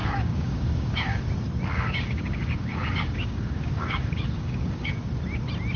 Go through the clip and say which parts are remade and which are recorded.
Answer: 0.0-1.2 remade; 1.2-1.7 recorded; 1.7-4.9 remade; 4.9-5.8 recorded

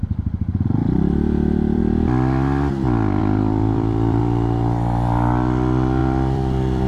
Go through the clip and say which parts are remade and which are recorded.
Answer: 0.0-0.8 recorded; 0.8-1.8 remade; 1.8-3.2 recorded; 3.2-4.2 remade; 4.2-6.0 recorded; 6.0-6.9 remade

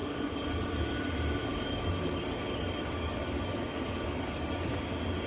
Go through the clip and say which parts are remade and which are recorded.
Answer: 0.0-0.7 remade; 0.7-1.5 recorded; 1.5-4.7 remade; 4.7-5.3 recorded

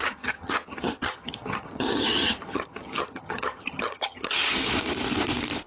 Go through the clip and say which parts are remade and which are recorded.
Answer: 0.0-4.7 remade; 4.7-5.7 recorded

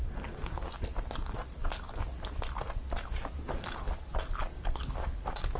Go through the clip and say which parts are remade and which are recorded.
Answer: 0.0-5.6 recorded

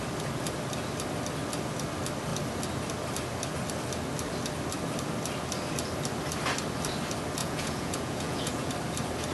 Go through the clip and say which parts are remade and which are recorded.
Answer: 0.0-7.4 recorded; 7.4-8.7 remade; 8.7-9.3 recorded

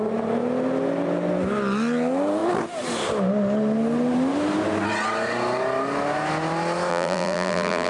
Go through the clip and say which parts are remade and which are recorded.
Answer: 0.0-6.9 recorded; 6.9-7.9 remade

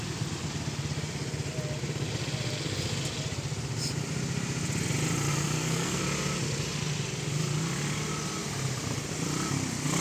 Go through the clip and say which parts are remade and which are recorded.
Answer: 0.0-5.3 recorded; 5.3-6.0 remade; 6.0-10.0 recorded